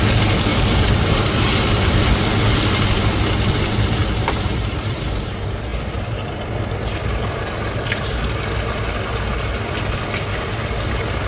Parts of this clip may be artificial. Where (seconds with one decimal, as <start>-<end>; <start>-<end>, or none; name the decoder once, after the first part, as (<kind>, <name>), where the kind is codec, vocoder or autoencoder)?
0.5-1.9 (vocoder, BigVGAN v2); 4.0-5.3; 5.7-6.5